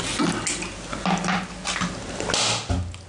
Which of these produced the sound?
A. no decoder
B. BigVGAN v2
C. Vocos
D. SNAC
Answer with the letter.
A